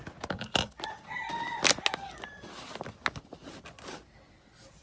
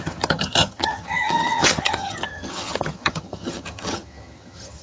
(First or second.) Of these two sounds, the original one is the first